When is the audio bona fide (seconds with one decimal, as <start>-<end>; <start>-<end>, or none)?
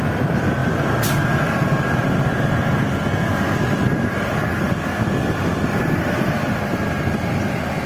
0.0-7.9